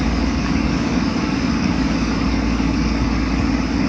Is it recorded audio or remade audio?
remade